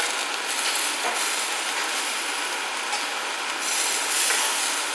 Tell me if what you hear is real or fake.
real